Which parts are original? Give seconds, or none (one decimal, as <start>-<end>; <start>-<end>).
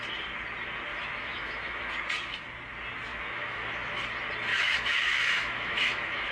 0.0-0.9; 1.9-3.1; 4.0-4.5